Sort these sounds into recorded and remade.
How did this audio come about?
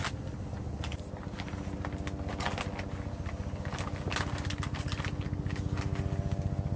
recorded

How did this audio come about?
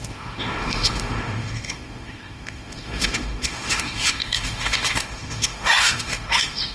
remade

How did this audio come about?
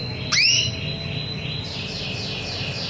recorded